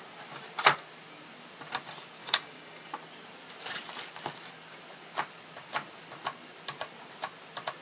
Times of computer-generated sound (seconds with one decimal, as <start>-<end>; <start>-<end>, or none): 2.2-2.9